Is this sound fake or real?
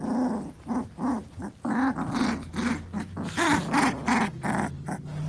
real